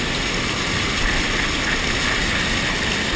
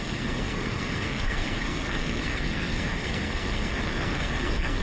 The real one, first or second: first